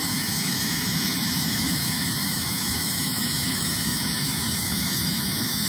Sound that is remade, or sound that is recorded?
remade